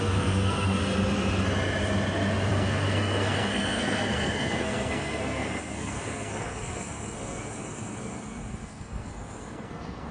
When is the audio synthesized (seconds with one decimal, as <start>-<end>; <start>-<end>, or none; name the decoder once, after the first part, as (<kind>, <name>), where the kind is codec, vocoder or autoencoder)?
0.0-0.8 (codec, SNAC); 2.5-10.1